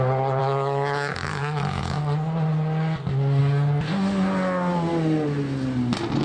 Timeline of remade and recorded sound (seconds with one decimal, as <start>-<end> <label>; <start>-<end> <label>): 0.0-0.4 recorded; 0.4-2.0 remade; 2.0-6.2 recorded